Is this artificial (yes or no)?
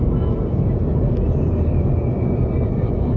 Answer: no